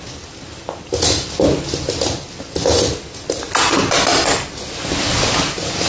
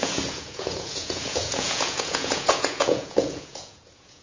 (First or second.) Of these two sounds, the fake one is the second